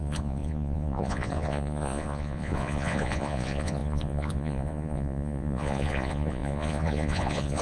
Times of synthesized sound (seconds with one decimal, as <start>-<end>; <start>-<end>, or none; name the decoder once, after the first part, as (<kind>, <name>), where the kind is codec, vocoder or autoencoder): 0.0-7.6 (vocoder, Vocos)